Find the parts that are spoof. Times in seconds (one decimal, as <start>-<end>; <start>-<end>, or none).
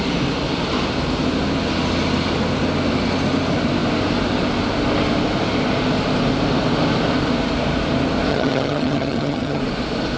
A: 8.3-9.6